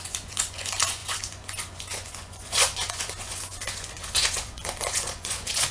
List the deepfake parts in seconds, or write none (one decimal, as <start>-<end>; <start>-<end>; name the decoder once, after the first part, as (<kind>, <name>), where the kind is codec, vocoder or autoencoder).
0.0-5.7 (vocoder, Vocos)